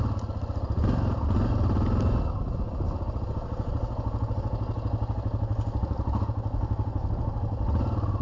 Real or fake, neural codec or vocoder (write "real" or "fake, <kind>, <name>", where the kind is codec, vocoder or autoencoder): real